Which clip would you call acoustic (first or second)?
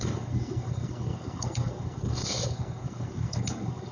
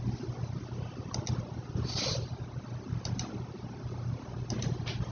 second